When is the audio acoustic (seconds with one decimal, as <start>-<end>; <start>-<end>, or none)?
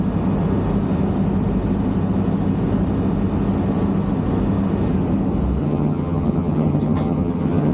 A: 0.0-5.6